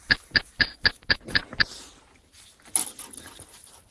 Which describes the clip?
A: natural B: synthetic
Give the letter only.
A